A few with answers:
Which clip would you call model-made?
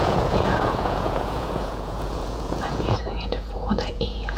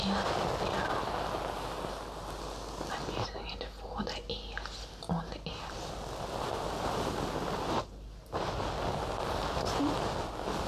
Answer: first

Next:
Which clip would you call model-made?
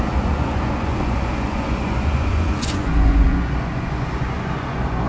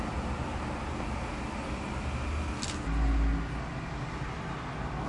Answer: first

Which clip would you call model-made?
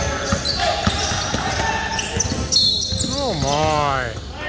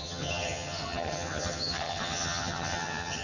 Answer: second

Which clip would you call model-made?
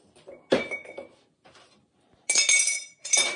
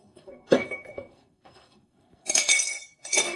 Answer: second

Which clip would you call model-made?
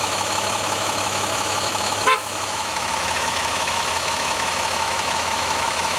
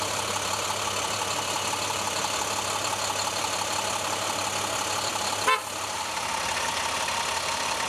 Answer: first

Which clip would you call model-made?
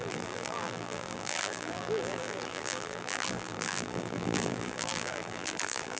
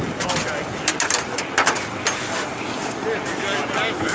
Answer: first